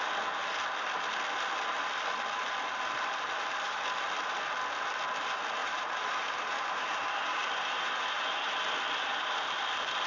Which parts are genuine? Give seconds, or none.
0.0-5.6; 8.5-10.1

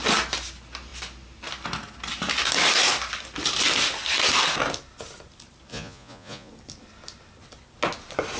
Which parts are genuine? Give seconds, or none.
0.0-5.7; 6.5-8.4

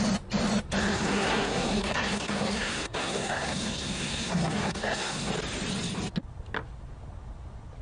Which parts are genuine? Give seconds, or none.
0.0-0.8; 5.3-7.8